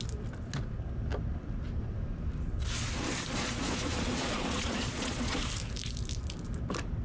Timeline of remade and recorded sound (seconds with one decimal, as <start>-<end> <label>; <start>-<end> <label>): 0.0-3.3 recorded; 3.3-5.4 remade; 5.4-7.0 recorded

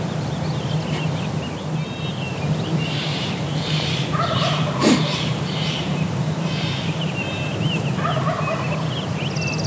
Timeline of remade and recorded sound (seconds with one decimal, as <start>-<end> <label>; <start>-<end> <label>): 0.0-3.1 recorded; 3.1-8.0 remade; 8.0-9.7 recorded

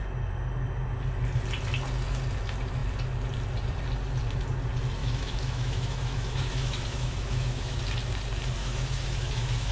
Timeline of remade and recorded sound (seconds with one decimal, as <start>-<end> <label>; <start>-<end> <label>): 0.0-5.0 recorded; 5.0-7.8 remade; 7.8-8.6 recorded; 8.6-9.7 remade

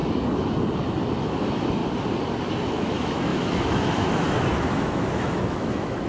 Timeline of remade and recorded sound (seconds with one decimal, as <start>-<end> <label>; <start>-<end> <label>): 0.0-1.2 recorded; 1.2-1.8 remade; 1.8-2.6 recorded; 2.6-6.1 remade

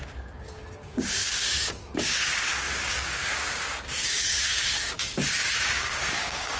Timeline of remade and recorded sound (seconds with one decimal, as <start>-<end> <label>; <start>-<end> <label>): 0.0-6.6 remade

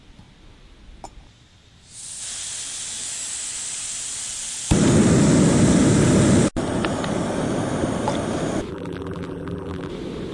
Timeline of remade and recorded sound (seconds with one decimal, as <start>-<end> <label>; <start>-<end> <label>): 0.0-8.7 recorded; 8.7-9.9 remade; 9.9-10.3 recorded

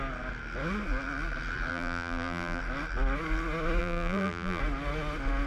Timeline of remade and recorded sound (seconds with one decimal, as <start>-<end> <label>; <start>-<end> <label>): 0.0-1.7 recorded; 1.7-2.6 remade; 2.6-3.8 recorded; 3.8-4.6 remade; 4.6-5.5 recorded